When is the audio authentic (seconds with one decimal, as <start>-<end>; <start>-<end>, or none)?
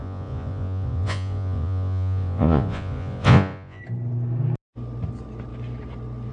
3.8-6.3